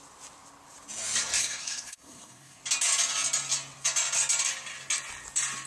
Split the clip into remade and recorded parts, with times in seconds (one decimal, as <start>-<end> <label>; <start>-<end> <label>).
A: 0.0-1.4 recorded; 1.4-2.6 remade; 2.6-5.7 recorded